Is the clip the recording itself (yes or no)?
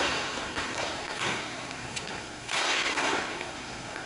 no